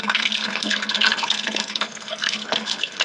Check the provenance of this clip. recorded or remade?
remade